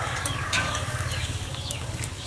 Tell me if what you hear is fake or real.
fake